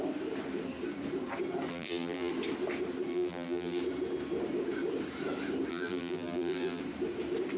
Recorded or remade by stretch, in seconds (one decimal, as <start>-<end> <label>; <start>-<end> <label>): 0.0-1.7 recorded; 1.7-2.3 remade; 2.3-3.1 recorded; 3.1-3.8 remade; 3.8-5.7 recorded; 5.7-6.8 remade; 6.8-7.6 recorded

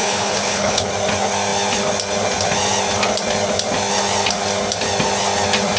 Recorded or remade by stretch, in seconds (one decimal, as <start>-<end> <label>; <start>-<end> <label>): 0.0-0.9 remade; 0.9-5.8 recorded

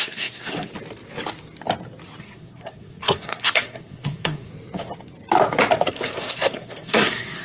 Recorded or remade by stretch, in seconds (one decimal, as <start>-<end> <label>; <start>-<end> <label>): 0.0-0.7 remade; 0.7-2.2 recorded; 2.2-4.5 remade; 4.5-5.9 recorded; 5.9-7.4 remade

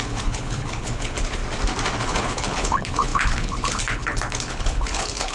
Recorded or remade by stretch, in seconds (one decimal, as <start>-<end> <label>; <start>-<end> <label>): 0.0-1.4 remade; 1.4-2.0 recorded; 2.0-5.3 remade

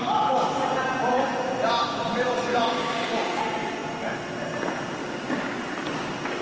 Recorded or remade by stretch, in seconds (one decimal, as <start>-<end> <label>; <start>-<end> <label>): 0.0-2.5 recorded; 2.5-3.4 remade; 3.4-5.0 recorded; 5.0-5.6 remade; 5.6-6.4 recorded

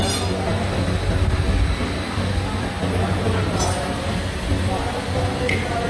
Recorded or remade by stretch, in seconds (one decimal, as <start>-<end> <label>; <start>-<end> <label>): 0.0-5.9 recorded